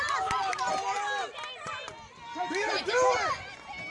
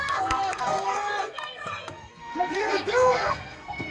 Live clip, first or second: first